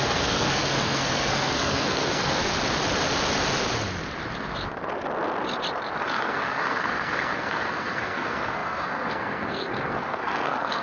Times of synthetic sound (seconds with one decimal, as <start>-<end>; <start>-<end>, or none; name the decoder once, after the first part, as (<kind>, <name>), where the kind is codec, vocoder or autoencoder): 0.0-2.5 (codec, SNAC); 6.0-10.8